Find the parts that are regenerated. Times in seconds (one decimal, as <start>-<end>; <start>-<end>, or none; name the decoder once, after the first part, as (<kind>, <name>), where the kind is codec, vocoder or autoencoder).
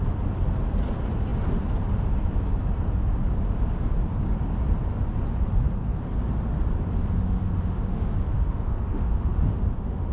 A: 7.2-10.1 (autoencoder, DAC-VAE)